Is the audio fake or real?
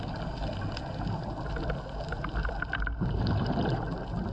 real